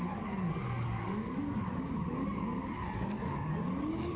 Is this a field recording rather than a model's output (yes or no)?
no